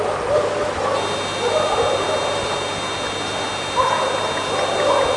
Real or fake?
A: real